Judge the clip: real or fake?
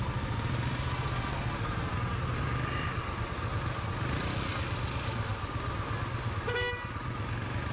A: real